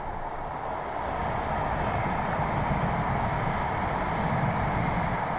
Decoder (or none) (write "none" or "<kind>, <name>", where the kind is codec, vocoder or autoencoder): none